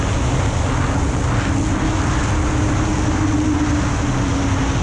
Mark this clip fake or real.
real